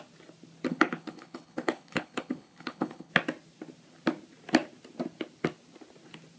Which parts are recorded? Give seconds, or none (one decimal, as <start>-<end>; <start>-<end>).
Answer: 0.0-0.7; 3.1-6.4